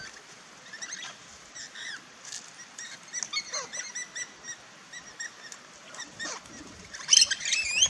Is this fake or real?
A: real